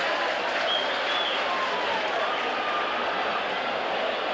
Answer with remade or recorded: recorded